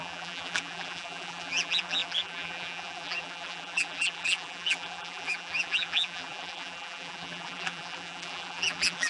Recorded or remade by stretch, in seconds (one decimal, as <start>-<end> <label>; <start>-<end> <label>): 0.0-9.1 remade